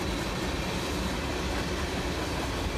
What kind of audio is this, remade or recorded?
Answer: recorded